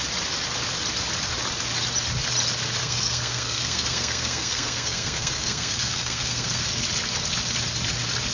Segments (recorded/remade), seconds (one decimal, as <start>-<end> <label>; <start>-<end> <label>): 0.0-2.8 recorded; 2.8-6.7 remade; 6.7-8.3 recorded